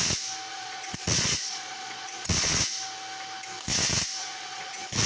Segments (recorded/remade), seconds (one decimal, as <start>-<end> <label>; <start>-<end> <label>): 0.0-0.5 recorded; 0.5-2.6 remade; 2.6-4.2 recorded; 4.2-5.1 remade

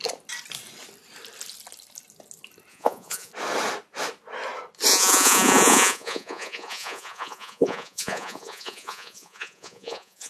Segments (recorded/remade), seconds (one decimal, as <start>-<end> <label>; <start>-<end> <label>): 0.0-2.7 recorded; 2.7-3.3 remade; 3.3-4.9 recorded; 4.9-10.3 remade

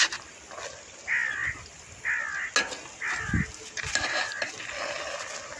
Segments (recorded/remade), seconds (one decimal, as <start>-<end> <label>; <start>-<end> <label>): 0.0-5.6 recorded

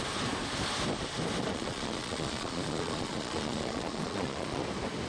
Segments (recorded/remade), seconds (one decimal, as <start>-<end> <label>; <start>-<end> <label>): 0.0-1.5 recorded; 1.5-4.6 remade; 4.6-5.1 recorded

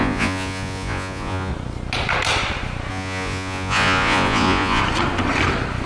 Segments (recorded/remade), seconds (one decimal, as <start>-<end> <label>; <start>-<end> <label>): 0.0-1.5 remade; 1.5-2.9 recorded; 2.9-4.8 remade; 4.8-5.9 recorded

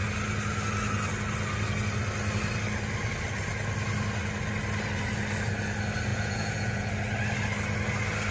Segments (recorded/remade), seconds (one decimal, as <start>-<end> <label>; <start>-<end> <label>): 0.0-6.1 recorded; 6.1-6.9 remade; 6.9-8.3 recorded

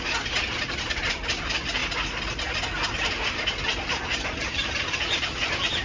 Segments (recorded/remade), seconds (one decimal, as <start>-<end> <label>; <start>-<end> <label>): 0.0-5.8 recorded